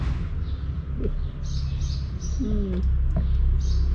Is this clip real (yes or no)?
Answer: yes